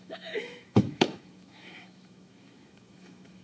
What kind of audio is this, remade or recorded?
remade